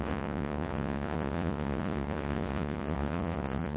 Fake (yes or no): yes